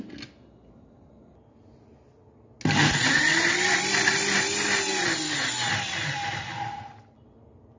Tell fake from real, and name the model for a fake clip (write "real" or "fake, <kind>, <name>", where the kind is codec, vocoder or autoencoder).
real